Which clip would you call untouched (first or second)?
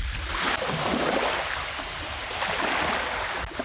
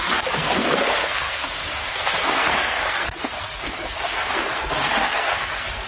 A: first